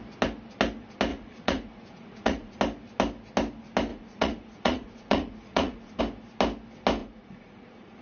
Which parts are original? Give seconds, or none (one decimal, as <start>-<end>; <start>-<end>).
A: 0.0-1.1; 2.6-3.9; 6.0-7.0